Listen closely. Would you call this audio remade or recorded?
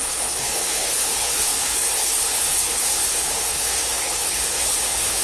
remade